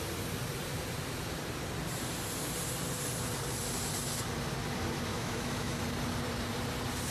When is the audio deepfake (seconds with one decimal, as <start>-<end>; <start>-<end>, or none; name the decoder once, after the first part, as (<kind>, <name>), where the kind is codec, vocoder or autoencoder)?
5.1-5.8 (autoencoder, DAC-VAE)